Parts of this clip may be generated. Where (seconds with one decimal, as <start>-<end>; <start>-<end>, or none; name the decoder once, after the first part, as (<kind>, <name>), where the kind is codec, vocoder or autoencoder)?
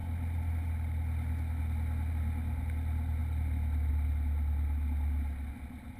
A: none